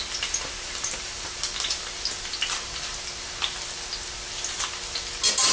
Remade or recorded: recorded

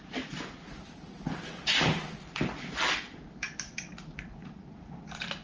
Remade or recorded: recorded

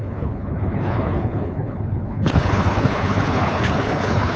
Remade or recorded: remade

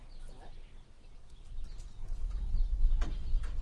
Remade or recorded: recorded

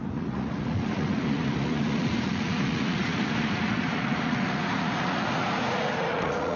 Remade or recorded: remade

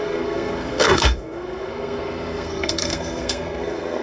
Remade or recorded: remade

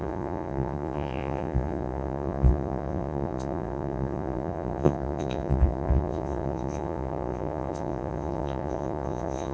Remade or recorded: remade